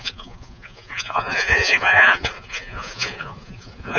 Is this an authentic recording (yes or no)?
no